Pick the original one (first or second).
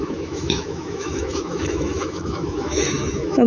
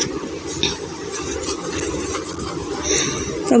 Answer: second